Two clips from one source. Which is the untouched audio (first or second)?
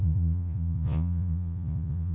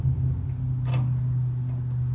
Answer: second